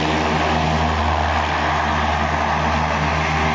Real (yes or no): yes